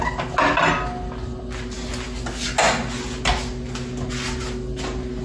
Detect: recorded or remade recorded